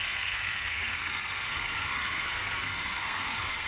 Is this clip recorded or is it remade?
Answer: remade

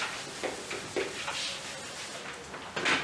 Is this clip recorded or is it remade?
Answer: recorded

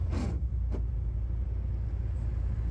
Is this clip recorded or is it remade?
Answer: recorded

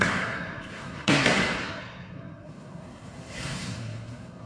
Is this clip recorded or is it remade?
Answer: remade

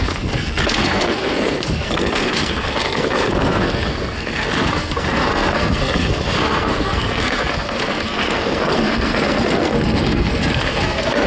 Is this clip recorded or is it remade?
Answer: remade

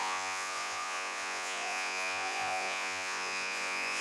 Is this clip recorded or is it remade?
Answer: remade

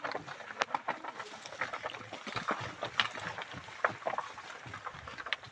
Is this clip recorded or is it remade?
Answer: recorded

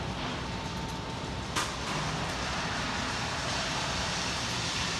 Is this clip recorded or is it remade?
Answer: recorded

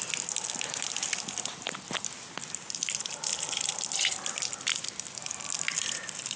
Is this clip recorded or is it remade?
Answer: recorded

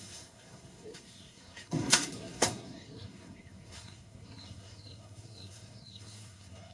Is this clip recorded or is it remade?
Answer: remade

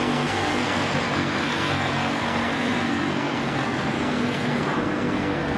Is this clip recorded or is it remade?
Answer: remade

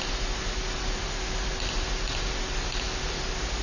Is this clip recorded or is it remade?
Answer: recorded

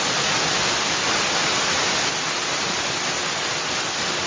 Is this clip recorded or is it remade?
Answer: recorded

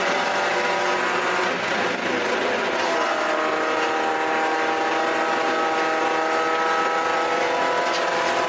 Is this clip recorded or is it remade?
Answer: recorded